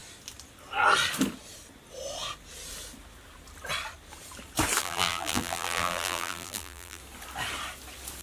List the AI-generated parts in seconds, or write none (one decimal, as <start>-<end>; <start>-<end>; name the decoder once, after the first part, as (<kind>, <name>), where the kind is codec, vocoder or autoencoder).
4.8-7.0 (vocoder, BigVGAN v2)

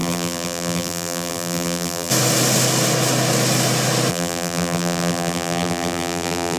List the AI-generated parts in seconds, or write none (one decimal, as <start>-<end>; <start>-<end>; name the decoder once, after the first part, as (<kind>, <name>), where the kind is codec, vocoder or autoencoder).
0.0-2.1 (vocoder, BigVGAN v2); 4.1-6.6

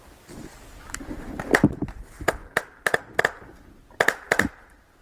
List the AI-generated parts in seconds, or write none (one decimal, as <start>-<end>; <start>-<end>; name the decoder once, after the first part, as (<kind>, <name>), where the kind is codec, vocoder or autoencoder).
none